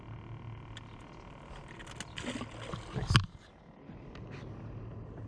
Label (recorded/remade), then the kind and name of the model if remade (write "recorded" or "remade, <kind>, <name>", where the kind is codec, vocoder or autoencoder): recorded